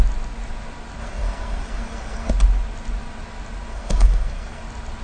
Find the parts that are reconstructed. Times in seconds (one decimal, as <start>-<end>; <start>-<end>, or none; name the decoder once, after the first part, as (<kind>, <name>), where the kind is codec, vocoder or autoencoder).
1.0-2.3 (codec, SNAC); 3.7-4.6